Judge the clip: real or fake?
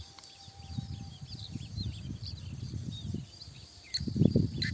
real